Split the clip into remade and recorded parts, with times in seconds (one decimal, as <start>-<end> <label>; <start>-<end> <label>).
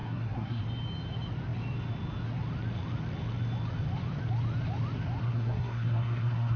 0.0-0.6 remade; 0.6-5.2 recorded; 5.2-6.6 remade